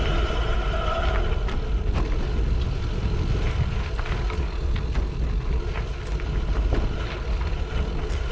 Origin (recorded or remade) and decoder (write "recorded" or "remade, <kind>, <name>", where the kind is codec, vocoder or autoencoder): recorded